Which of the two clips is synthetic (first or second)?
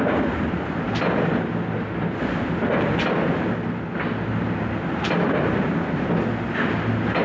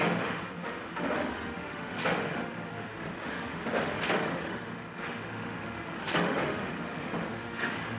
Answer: second